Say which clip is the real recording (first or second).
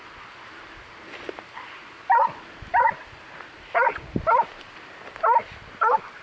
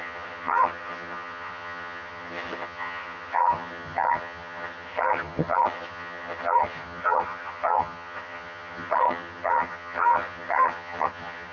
first